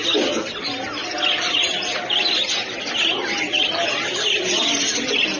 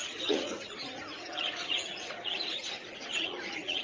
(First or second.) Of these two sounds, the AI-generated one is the second